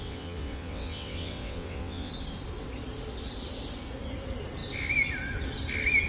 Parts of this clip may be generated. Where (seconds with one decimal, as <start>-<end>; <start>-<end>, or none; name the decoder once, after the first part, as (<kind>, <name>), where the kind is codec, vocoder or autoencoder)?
0.0-2.1 (vocoder, WaveNeXt)